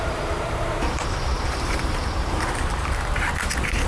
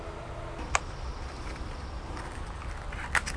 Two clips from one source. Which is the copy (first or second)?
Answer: first